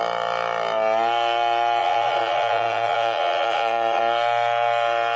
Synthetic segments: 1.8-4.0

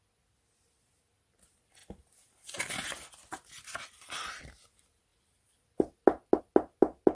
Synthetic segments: none

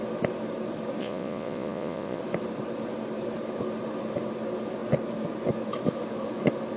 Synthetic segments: 1.0-2.2

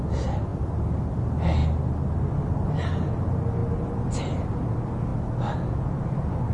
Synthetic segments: none

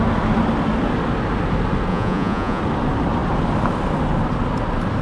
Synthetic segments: 1.9-2.6

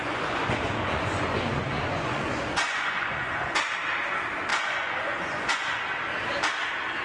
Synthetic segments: 0.0-3.6; 4.5-5.8

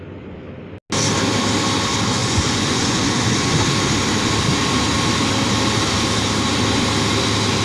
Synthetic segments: 2.2-3.6